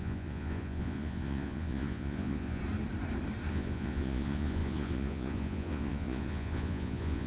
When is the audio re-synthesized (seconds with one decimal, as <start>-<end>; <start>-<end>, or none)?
0.0-2.6; 3.5-7.3